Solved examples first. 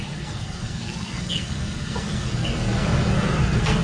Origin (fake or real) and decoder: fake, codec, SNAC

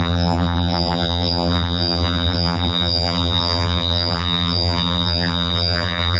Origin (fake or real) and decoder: fake, vocoder, BigVGAN v2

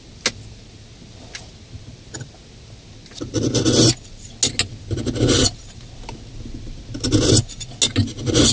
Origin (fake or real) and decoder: real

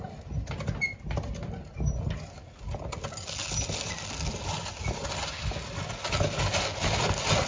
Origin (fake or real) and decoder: real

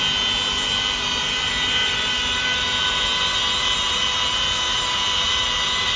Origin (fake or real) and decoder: real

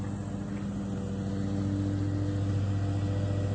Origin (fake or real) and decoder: real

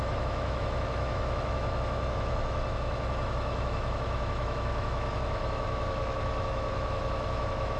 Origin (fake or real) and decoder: fake, autoencoder, DAC-VAE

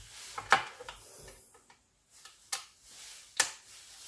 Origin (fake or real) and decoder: real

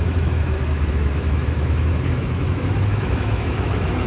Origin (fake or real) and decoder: fake, autoencoder, DAC-VAE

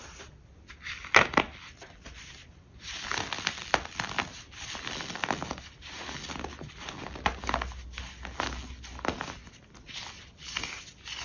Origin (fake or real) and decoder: real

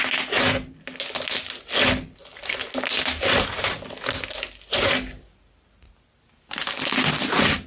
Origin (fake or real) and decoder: real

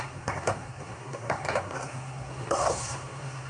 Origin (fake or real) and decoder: fake, codec, SNAC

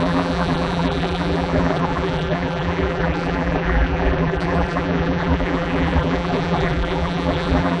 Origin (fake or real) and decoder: fake, vocoder, BigVGAN v2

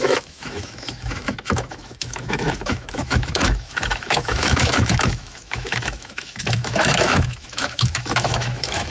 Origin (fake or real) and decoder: fake, autoencoder, DAC-VAE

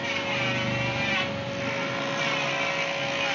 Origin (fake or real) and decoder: real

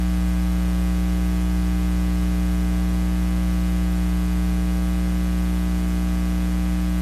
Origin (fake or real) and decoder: real